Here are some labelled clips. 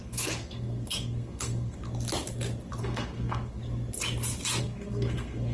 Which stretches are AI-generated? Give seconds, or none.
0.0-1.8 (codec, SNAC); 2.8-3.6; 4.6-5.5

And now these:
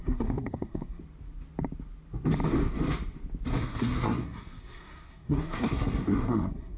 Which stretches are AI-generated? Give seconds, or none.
0.0-1.0 (codec, SNAC); 3.5-6.8

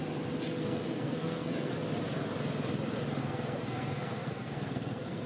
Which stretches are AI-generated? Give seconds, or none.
0.5-1.7 (codec, SNAC); 3.2-5.3

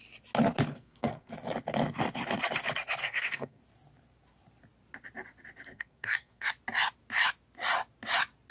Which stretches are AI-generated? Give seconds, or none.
0.7-1.3 (codec, SNAC); 3.0-3.6; 5.7-6.5

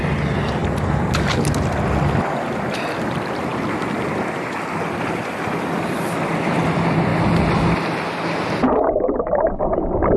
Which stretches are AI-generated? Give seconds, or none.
none